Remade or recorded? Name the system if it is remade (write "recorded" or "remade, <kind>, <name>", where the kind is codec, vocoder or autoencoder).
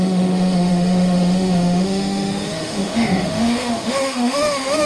remade, autoencoder, DAC-VAE